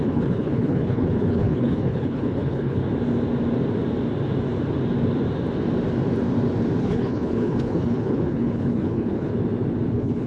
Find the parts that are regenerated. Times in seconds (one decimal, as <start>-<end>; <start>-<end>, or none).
0.0-2.8; 6.8-9.3; 9.9-10.3